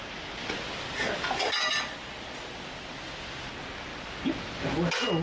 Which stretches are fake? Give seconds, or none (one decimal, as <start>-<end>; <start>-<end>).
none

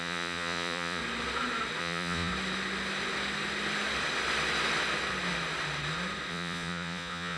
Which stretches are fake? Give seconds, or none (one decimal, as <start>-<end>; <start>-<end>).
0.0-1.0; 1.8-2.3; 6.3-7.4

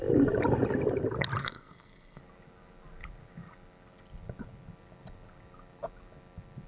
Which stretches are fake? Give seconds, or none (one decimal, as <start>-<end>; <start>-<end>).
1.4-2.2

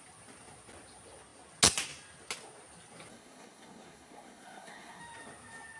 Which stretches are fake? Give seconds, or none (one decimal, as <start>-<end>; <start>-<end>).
3.1-5.0